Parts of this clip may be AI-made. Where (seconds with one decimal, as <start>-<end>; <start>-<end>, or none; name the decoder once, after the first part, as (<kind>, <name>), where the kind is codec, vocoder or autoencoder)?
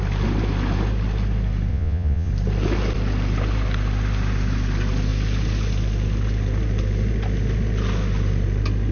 1.7-2.3 (vocoder, Vocos)